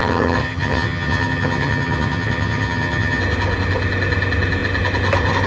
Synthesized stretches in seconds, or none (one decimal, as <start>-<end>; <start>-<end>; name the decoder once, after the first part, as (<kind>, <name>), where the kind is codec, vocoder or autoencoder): 0.0-3.2 (vocoder, HiFi-GAN)